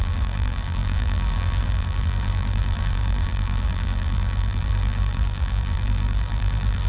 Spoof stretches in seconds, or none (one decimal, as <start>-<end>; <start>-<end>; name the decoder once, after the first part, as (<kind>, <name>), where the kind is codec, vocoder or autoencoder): 0.0-6.9 (vocoder, BigVGAN v2)